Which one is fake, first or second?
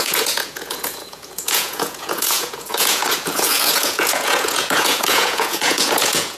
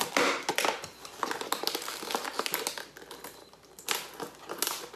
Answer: first